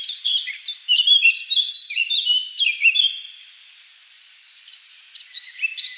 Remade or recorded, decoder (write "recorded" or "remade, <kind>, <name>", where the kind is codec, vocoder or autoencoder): remade, vocoder, BigVGAN v2